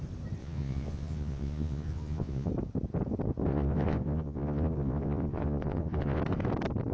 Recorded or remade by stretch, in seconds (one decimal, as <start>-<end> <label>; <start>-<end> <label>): 0.0-0.4 recorded; 0.4-2.5 remade; 2.5-3.5 recorded; 3.5-6.2 remade; 6.2-6.9 recorded